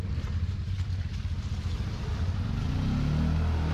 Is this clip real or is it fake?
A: real